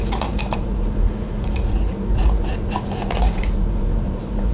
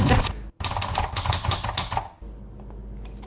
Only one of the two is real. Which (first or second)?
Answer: second